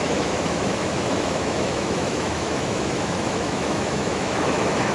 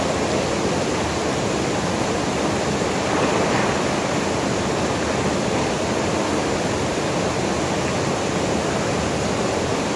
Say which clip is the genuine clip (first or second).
second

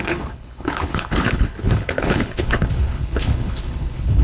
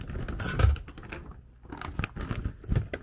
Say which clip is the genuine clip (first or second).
second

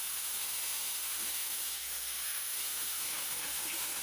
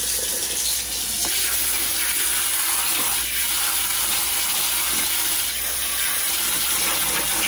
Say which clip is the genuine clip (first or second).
second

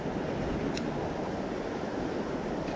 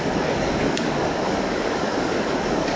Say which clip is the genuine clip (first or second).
first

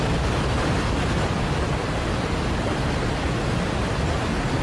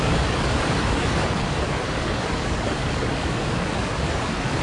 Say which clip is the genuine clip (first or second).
first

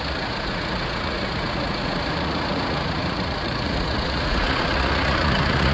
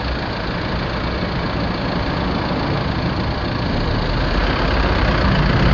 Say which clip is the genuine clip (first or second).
second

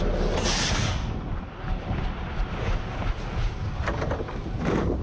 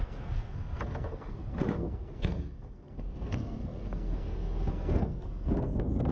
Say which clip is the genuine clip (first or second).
first